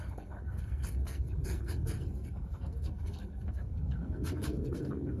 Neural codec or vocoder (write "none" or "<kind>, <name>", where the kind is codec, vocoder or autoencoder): codec, SNAC